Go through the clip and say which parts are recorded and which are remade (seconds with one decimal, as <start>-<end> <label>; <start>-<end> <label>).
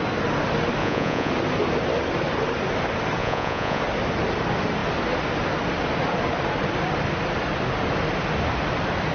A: 0.0-0.8 recorded; 0.8-1.3 remade; 1.3-3.2 recorded; 3.2-3.8 remade; 3.8-9.1 recorded